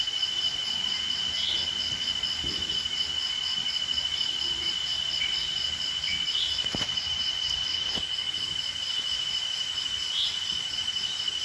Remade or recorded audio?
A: recorded